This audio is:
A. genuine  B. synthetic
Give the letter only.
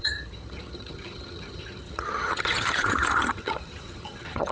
B